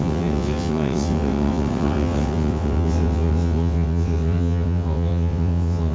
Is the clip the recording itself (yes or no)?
no